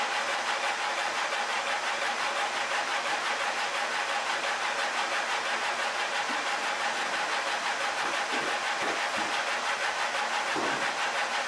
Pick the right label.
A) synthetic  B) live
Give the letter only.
B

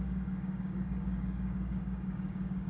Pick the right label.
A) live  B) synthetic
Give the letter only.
B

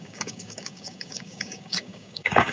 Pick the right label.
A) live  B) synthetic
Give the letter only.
B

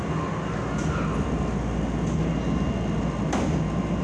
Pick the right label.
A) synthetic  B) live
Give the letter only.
B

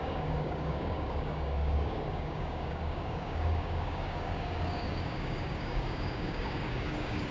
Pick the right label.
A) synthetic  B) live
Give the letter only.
A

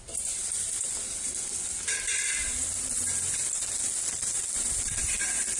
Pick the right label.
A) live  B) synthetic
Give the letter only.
A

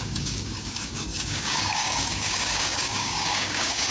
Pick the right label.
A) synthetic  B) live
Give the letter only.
A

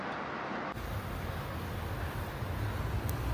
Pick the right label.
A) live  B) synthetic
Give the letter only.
A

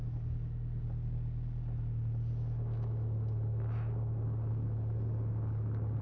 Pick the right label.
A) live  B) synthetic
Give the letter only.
A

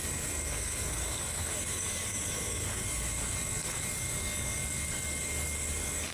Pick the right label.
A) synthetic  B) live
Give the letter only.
A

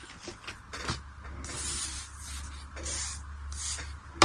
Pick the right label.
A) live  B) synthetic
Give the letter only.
A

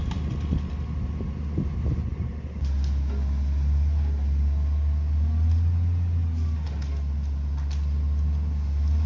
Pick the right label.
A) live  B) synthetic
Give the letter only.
A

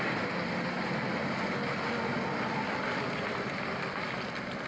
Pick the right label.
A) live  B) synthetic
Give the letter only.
A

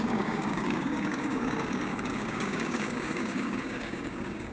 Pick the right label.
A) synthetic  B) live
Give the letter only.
A